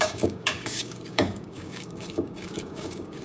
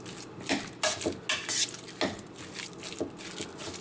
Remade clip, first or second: first